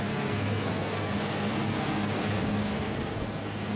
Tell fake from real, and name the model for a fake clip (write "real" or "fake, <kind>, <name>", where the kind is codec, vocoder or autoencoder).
fake, codec, SNAC